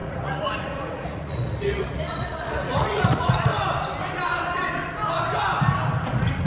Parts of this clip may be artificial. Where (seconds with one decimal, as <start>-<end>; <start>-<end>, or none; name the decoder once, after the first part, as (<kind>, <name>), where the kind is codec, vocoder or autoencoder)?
0.0-3.5 (vocoder, Vocos); 6.1-6.5